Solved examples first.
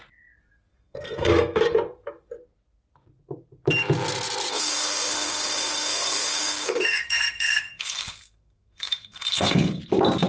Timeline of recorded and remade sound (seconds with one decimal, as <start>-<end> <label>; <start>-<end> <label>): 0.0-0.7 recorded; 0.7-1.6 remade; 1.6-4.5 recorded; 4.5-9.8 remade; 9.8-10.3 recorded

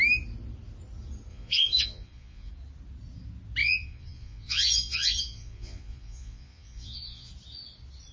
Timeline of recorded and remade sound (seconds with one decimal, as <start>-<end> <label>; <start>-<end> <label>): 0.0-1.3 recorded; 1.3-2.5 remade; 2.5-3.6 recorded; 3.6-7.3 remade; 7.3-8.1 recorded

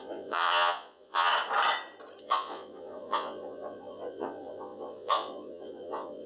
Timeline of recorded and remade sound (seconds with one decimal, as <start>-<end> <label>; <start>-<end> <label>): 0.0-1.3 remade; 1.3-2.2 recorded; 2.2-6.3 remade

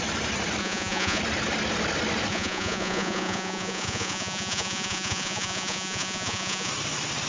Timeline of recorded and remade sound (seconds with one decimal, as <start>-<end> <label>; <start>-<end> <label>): 0.0-0.6 recorded; 0.6-1.2 remade; 1.2-2.3 recorded; 2.3-6.7 remade; 6.7-7.3 recorded

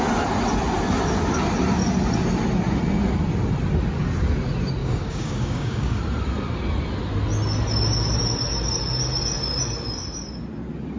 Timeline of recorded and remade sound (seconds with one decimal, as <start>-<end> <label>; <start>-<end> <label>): 0.0-4.8 recorded; 4.8-6.0 remade; 6.0-11.0 recorded

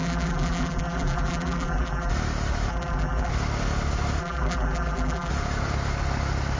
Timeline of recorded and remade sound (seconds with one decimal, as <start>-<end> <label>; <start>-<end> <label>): 0.0-2.1 remade; 2.1-2.7 recorded; 2.7-3.3 remade; 3.3-4.2 recorded; 4.2-5.3 remade; 5.3-6.6 recorded

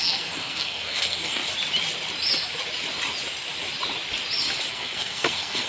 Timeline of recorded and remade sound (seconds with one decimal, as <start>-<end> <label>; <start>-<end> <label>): 0.0-1.4 remade; 1.4-4.7 recorded; 4.7-5.7 remade

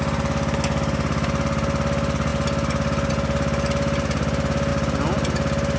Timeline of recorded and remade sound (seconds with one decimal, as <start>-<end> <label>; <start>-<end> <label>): 0.0-5.8 recorded